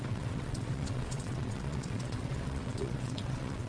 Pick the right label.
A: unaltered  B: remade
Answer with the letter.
B